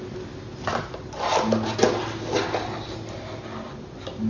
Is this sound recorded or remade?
recorded